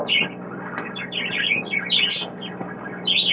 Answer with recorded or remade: recorded